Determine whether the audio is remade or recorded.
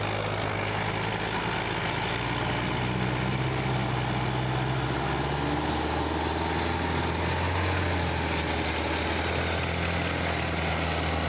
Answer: recorded